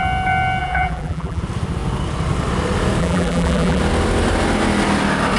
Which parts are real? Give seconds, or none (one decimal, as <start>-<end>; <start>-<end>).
0.0-0.6; 1.4-3.0; 3.8-5.4